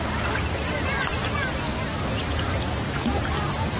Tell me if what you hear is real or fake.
fake